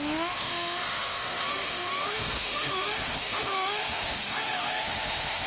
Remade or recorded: remade